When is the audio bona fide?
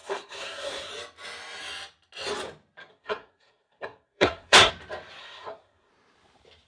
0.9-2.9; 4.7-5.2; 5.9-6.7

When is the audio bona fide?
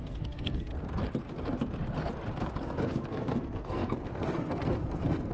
0.7-2.6